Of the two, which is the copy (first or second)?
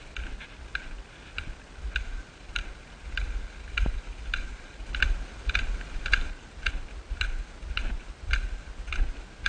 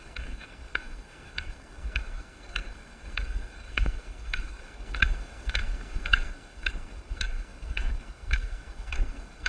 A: second